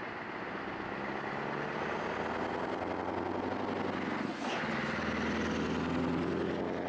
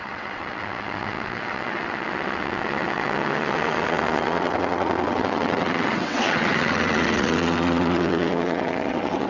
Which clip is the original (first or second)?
first